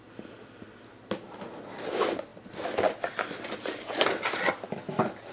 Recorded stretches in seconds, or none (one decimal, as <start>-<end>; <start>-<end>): 0.0-5.3